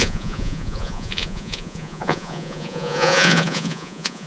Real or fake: fake